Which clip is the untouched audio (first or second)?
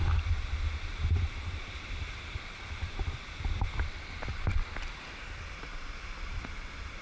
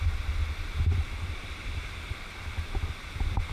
second